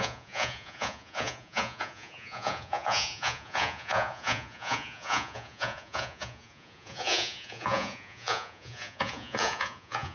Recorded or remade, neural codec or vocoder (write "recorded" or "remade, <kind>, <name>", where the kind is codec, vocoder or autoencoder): remade, vocoder, Vocos